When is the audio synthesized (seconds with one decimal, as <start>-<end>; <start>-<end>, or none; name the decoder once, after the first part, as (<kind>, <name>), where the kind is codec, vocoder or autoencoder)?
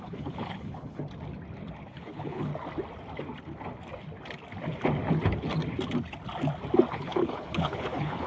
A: 0.0-1.0 (codec, HILCodec); 1.9-2.5; 6.9-8.3